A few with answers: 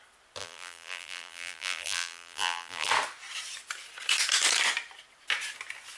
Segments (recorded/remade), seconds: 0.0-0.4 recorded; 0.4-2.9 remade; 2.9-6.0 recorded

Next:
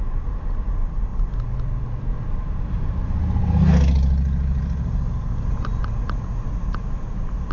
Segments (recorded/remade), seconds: 0.0-1.1 recorded; 1.1-1.9 remade; 1.9-7.5 recorded

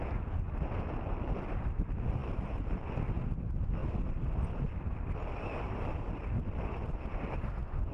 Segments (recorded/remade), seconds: 0.0-7.9 recorded

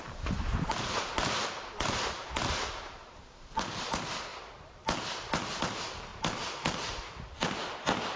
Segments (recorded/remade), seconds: 0.0-4.3 remade; 4.3-5.6 recorded; 5.6-6.1 remade; 6.1-8.2 recorded

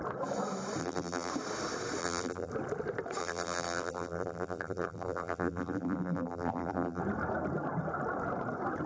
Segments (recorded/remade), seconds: 0.0-0.8 recorded; 0.8-1.3 remade; 1.3-2.0 recorded; 2.0-2.5 remade; 2.5-3.2 recorded; 3.2-7.0 remade; 7.0-8.9 recorded

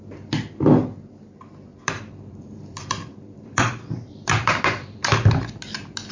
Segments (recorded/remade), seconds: 0.0-1.7 recorded; 1.7-5.4 remade; 5.4-6.1 recorded

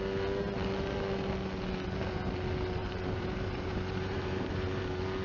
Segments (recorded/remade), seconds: 0.0-2.8 recorded; 2.8-4.8 remade; 4.8-5.2 recorded

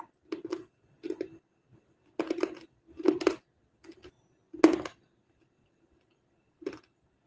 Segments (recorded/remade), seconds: 0.0-7.3 recorded